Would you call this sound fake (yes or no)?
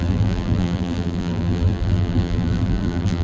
yes